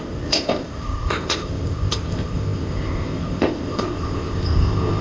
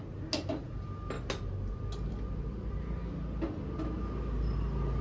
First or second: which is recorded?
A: second